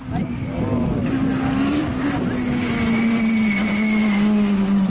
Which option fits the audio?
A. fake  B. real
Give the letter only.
B